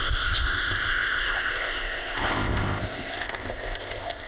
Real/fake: fake